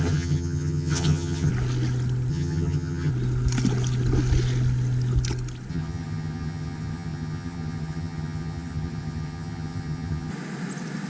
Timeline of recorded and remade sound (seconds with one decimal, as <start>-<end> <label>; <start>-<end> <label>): 0.0-1.5 remade; 1.5-2.3 recorded; 2.3-3.1 remade; 3.1-5.7 recorded; 5.7-10.3 remade; 10.3-11.1 recorded